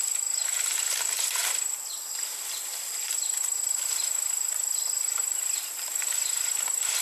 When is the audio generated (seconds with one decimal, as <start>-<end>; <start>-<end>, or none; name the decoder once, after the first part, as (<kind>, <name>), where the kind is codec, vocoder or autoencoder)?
1.4-3.9 (vocoder, BigVGAN v2); 5.2-6.5